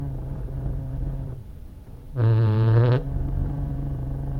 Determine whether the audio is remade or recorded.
remade